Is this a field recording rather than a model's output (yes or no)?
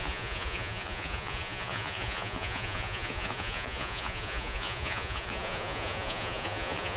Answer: no